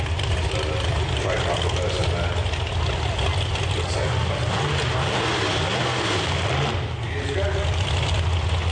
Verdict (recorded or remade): recorded